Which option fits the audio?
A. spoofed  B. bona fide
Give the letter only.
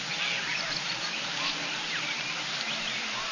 B